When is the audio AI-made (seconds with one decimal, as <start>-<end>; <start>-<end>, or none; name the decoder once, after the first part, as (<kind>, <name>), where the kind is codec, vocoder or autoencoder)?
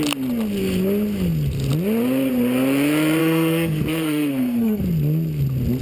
3.2-4.8 (codec, SNAC)